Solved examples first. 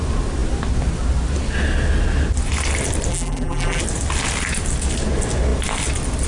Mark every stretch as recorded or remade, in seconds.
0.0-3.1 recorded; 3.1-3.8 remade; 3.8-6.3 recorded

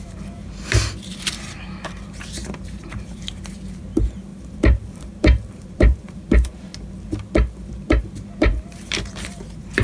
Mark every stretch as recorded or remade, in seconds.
0.0-6.7 remade; 6.7-8.0 recorded; 8.0-9.8 remade

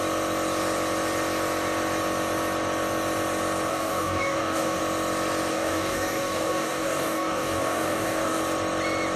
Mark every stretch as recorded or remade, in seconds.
0.0-3.7 recorded; 3.7-4.8 remade; 4.8-5.5 recorded; 5.5-8.4 remade; 8.4-9.2 recorded

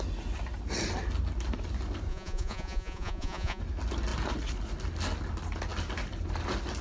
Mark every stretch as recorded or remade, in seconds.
0.0-2.1 recorded; 2.1-3.6 remade; 3.6-6.8 recorded

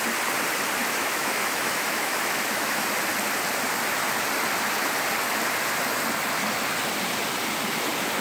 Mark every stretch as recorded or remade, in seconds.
0.0-0.8 recorded; 0.8-2.8 remade; 2.8-8.2 recorded